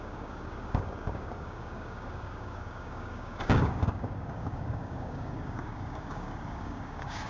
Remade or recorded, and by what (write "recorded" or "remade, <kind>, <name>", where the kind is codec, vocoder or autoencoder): remade, codec, DAC